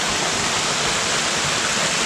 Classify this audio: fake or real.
real